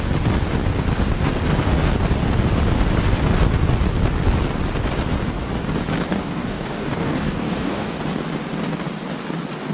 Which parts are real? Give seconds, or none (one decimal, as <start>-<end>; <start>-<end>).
0.0-6.1; 8.0-9.7

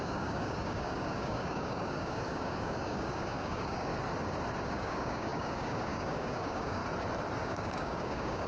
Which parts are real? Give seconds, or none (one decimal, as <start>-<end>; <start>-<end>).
3.9-4.7; 6.8-7.4